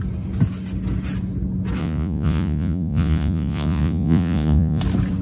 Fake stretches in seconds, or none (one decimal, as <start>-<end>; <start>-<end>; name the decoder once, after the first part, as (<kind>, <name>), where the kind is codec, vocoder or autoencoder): 1.8-4.8 (vocoder, Vocos)